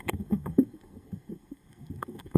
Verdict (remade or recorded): remade